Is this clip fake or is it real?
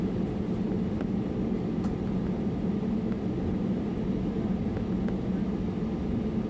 real